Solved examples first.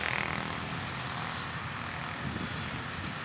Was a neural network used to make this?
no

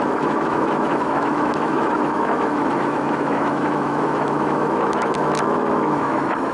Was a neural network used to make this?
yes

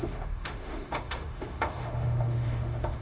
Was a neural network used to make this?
yes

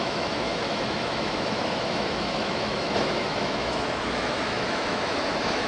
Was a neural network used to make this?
yes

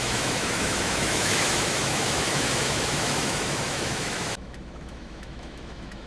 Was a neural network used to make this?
yes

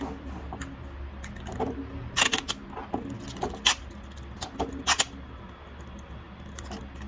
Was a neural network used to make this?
no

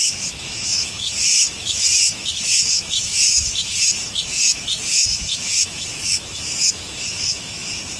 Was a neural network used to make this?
yes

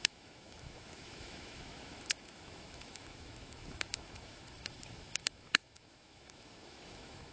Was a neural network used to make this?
yes